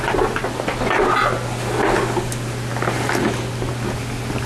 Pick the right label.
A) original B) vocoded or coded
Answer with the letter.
A